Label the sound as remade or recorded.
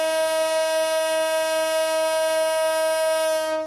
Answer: recorded